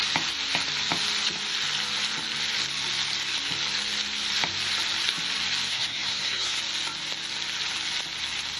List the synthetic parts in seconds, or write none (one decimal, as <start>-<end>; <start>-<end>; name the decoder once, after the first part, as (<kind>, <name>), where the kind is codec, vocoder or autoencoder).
5.7-6.6 (codec, SNAC)